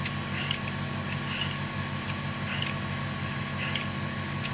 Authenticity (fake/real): real